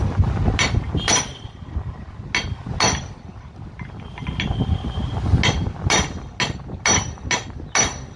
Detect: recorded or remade recorded